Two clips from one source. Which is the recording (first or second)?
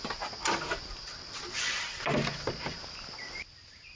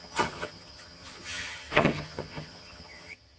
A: first